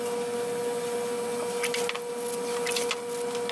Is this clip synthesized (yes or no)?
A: no